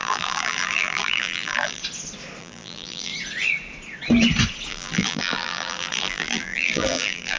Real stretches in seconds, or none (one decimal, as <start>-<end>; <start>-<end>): 1.8-2.4; 3.1-4.7